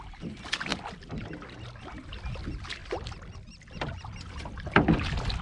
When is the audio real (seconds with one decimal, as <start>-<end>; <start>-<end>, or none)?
0.0-5.4